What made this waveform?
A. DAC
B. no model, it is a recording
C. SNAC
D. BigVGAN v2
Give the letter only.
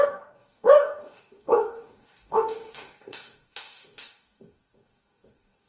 A